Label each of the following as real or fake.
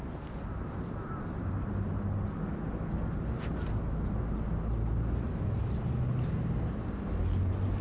real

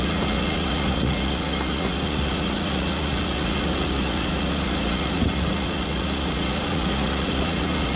fake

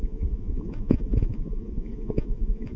fake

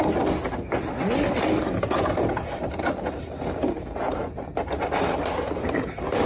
real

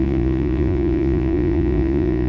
fake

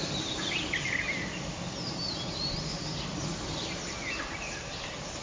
real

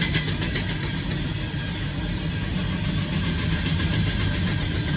real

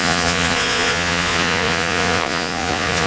fake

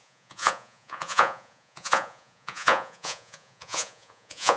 fake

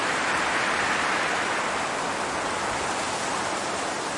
real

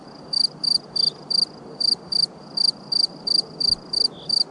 real